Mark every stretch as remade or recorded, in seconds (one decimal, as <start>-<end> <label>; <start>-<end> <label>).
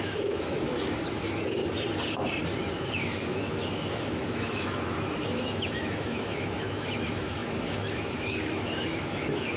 0.0-1.6 remade; 1.6-2.9 recorded; 2.9-9.6 remade